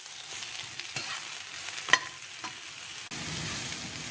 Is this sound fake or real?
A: real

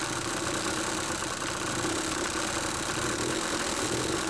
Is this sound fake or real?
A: real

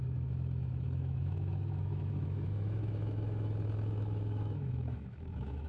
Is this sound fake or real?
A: fake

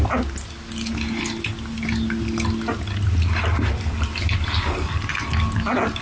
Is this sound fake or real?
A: real